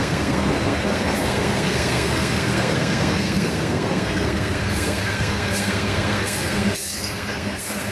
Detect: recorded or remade remade